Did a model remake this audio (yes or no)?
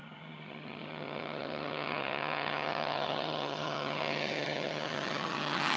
yes